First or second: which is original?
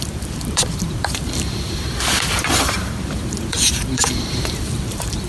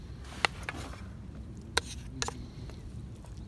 second